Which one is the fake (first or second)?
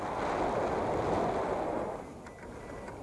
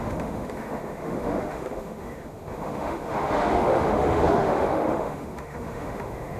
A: second